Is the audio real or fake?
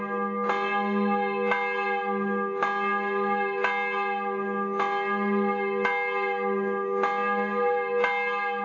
real